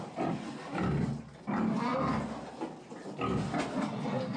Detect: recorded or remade recorded